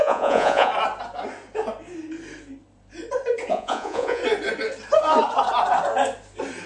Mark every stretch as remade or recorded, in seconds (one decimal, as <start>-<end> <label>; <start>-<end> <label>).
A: 0.0-0.7 remade; 0.7-3.5 recorded; 3.5-4.2 remade; 4.2-6.7 recorded